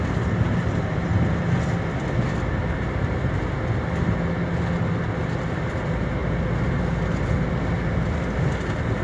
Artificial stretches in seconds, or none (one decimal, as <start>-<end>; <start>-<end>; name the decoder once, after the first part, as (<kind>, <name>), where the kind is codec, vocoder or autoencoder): 2.6-3.4 (vocoder, BigVGAN v2)